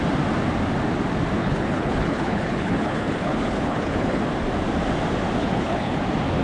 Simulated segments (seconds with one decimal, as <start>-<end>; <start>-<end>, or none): 1.4-4.2; 5.4-6.0